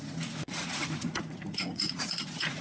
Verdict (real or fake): fake